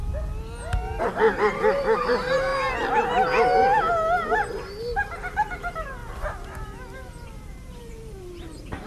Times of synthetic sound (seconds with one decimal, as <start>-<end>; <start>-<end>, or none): 1.0-2.5; 4.8-8.9